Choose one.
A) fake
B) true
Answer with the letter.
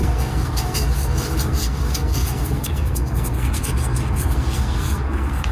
A